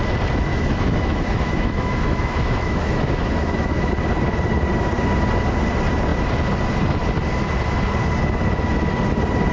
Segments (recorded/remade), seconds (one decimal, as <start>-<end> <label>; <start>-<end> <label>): 0.0-0.5 recorded; 0.5-3.9 remade; 3.9-9.5 recorded